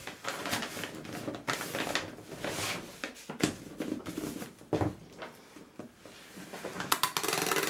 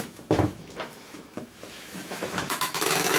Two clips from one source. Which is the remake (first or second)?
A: second